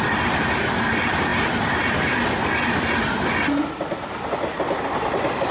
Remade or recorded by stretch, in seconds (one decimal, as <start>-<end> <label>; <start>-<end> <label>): 0.0-5.5 recorded